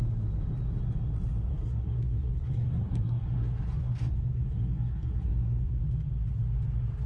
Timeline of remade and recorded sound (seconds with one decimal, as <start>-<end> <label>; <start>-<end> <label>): 0.0-1.5 recorded; 1.5-5.8 remade; 5.8-7.1 recorded